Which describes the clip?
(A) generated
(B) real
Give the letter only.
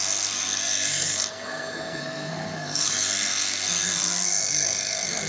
A